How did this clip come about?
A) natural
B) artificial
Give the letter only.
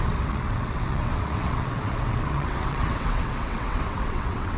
B